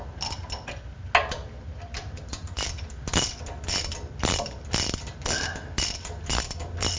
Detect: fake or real real